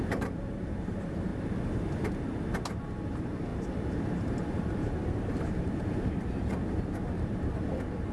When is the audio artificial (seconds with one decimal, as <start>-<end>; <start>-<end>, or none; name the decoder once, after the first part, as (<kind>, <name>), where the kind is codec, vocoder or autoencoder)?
0.0-1.3 (vocoder, BigVGAN v2); 2.8-8.1